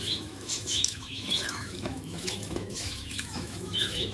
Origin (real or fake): fake